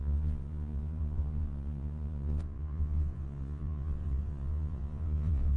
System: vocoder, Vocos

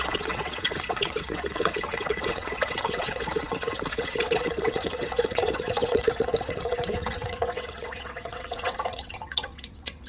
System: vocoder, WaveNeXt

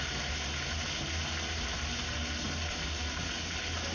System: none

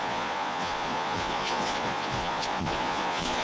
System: vocoder, Vocos